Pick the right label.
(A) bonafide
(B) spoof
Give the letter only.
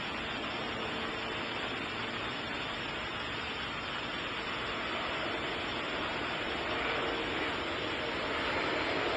A